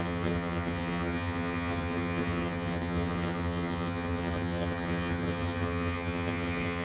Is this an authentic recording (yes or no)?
no